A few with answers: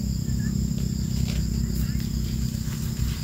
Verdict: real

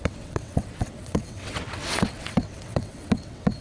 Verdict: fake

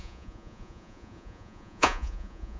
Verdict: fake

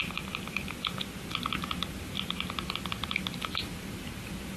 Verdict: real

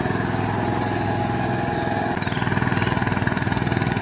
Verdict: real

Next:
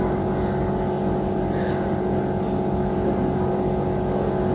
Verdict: real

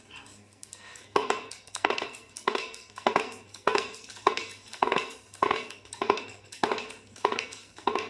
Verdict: fake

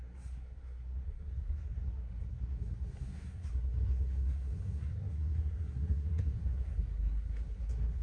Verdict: fake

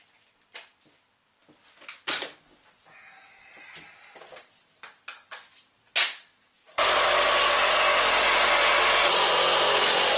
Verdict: real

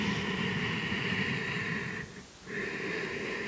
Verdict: real